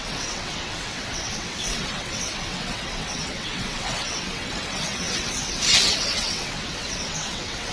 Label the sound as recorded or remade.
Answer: remade